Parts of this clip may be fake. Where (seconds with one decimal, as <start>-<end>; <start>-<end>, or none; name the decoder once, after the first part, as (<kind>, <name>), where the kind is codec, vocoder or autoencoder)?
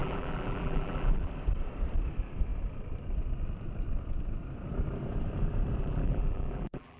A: 0.0-1.3 (vocoder, BigVGAN v2); 5.8-7.0